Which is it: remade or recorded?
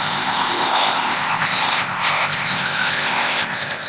remade